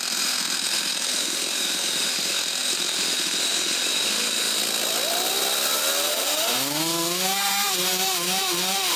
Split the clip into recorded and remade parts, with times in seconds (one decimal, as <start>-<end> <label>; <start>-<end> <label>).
0.0-4.6 remade; 4.6-6.1 recorded; 6.1-9.0 remade

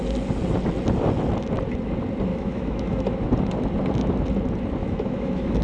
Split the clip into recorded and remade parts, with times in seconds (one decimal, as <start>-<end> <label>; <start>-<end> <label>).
0.0-2.3 recorded; 2.3-3.0 remade; 3.0-4.8 recorded; 4.8-5.6 remade

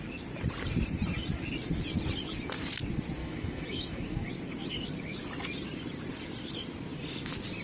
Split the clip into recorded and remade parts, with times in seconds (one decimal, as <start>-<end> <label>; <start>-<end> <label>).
0.0-3.2 recorded; 3.2-4.3 remade; 4.3-7.6 recorded

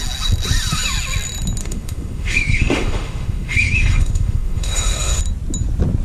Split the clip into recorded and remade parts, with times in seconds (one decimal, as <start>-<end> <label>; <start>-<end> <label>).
0.0-1.6 recorded; 1.6-5.2 remade; 5.2-6.0 recorded

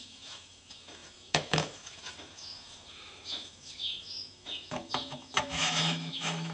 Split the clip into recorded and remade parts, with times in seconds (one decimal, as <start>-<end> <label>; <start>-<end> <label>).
0.0-6.5 remade

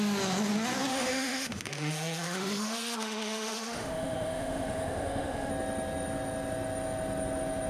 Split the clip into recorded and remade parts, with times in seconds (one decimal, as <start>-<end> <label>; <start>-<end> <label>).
0.0-0.9 recorded; 0.9-5.5 remade; 5.5-7.7 recorded

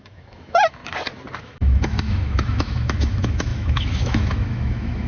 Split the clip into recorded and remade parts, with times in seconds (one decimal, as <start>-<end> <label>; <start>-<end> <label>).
0.0-0.8 remade; 0.8-1.4 recorded; 1.4-5.1 remade